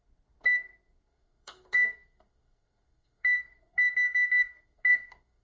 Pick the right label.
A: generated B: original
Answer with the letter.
A